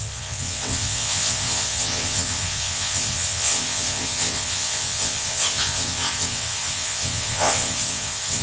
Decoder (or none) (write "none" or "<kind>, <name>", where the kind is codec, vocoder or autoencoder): vocoder, WaveNeXt